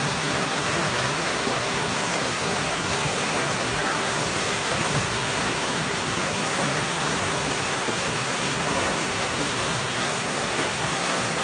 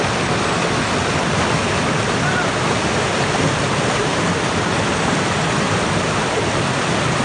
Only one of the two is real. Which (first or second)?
second